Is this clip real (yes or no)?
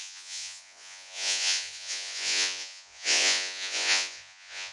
no